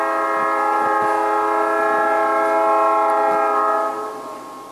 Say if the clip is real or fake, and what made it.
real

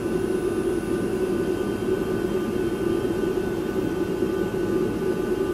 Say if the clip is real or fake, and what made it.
real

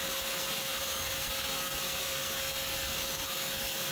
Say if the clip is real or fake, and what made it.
fake, codec, SNAC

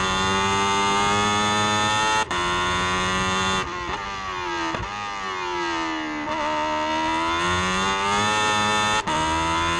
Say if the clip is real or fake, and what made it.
real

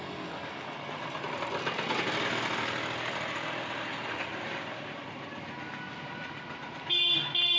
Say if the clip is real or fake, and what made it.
real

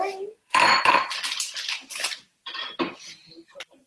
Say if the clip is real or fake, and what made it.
fake, vocoder, BigVGAN v2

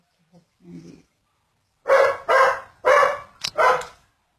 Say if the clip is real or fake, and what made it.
real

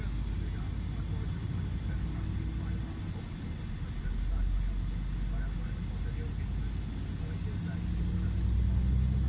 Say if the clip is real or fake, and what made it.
real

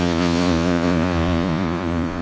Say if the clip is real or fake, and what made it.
fake, vocoder, Vocos